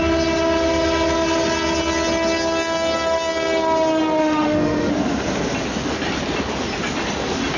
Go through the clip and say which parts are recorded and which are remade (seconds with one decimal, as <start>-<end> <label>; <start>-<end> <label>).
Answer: 0.0-4.2 recorded; 4.2-4.9 remade; 4.9-7.6 recorded